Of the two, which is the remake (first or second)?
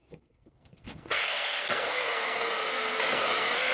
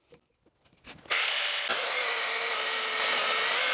first